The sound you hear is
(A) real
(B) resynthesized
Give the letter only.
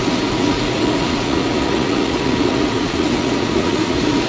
B